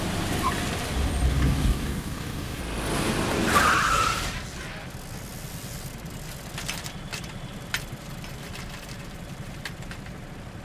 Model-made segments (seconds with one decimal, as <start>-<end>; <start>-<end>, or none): 1.3-2.6